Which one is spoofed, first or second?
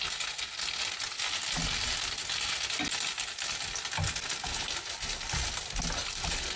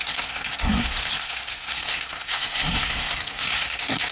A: second